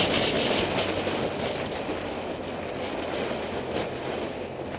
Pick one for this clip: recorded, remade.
recorded